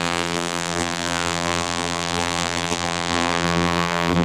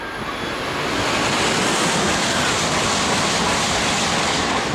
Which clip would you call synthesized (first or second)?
first